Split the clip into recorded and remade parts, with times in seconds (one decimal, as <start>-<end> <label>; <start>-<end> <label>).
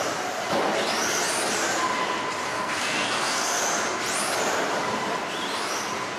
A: 0.0-2.4 recorded; 2.4-3.6 remade; 3.6-6.2 recorded